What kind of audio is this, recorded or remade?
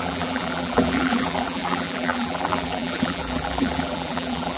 remade